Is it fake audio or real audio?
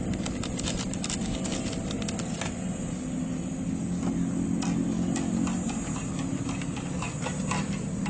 real